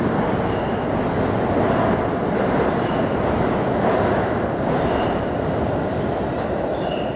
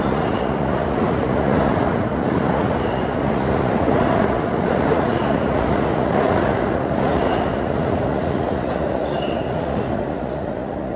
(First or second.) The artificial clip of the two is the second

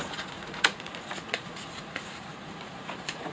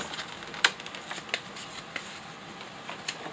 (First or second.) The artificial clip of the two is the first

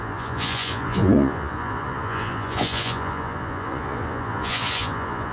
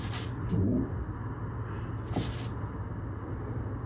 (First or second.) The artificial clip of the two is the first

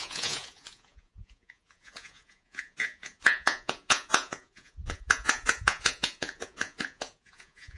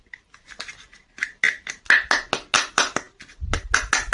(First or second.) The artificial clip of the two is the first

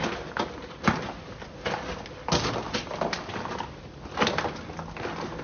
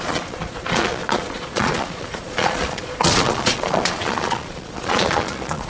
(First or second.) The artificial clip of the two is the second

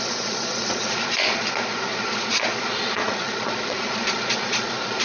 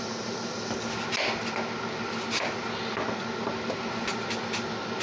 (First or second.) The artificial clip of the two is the first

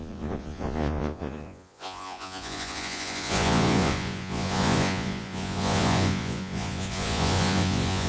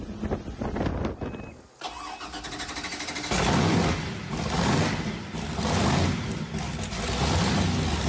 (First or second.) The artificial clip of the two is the first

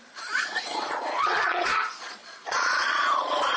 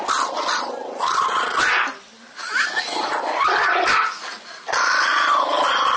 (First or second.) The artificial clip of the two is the first